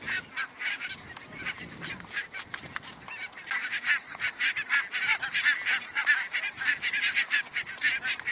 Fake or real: real